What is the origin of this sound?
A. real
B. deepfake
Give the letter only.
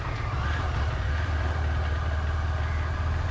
A